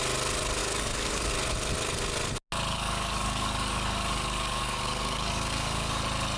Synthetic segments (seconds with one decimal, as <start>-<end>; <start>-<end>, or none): 0.6-1.3; 2.7-6.0